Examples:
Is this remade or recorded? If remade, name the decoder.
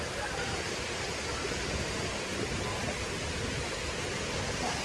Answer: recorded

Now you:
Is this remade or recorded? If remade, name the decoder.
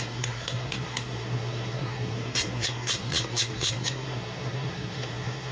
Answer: remade, codec, SNAC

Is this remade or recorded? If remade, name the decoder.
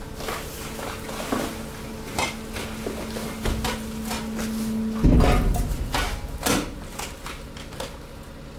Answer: recorded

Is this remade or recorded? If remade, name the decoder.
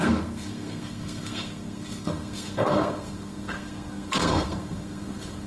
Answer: remade, codec, SNAC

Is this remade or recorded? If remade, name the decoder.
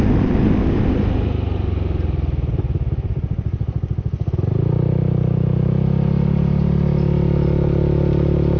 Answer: recorded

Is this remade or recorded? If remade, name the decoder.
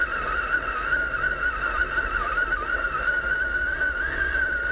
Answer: recorded